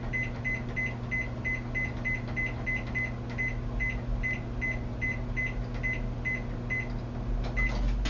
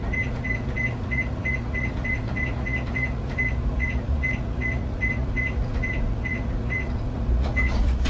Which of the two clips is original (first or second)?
first